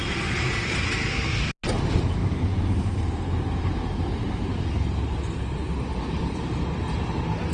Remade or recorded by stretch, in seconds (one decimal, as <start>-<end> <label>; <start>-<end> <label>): 0.0-0.9 remade; 0.9-1.7 recorded; 1.7-5.6 remade; 5.6-6.2 recorded; 6.2-7.5 remade